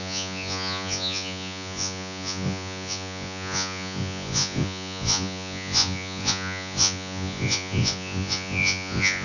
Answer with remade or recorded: remade